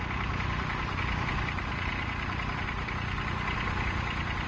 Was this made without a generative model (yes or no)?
yes